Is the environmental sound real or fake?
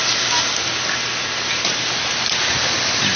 real